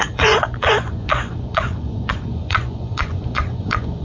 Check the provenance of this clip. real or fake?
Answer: fake